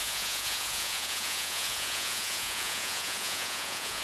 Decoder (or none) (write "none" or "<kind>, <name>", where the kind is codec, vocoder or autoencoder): vocoder, Vocos